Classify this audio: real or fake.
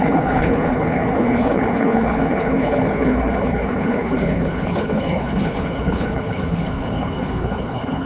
fake